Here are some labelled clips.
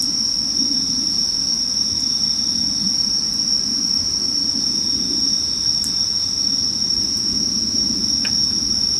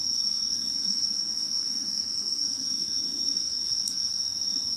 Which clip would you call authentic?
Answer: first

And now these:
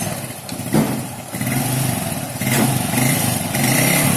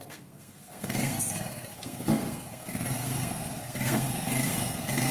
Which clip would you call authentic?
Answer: first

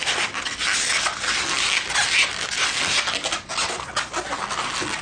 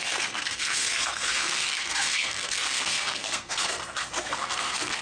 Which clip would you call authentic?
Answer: first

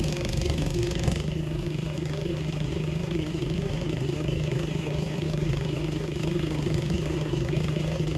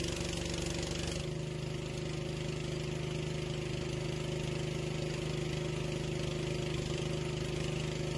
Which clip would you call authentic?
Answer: second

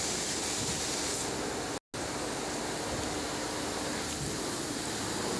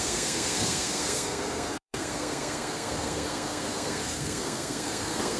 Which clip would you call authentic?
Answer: first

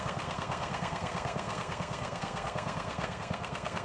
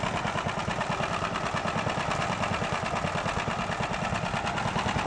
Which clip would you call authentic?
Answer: second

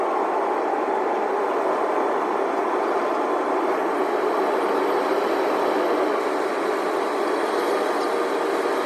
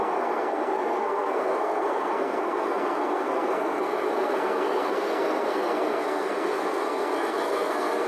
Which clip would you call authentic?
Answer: first